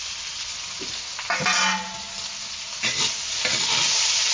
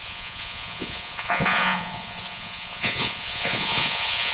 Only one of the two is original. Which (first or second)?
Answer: first